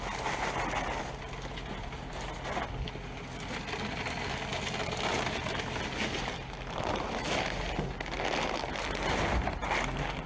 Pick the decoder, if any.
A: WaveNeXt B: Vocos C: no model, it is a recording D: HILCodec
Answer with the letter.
C